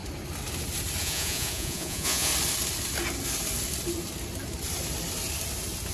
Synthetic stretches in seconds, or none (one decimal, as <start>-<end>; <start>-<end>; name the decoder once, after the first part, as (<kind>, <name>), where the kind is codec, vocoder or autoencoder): 1.0-2.3 (vocoder, Vocos)